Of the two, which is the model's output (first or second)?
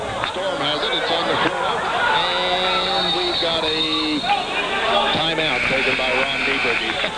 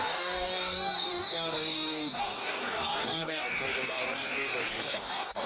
second